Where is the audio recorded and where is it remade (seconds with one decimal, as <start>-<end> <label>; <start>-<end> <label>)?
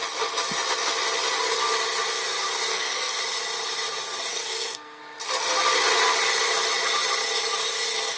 0.0-2.7 recorded; 2.7-3.2 remade; 3.2-4.3 recorded; 4.3-5.0 remade; 5.0-8.2 recorded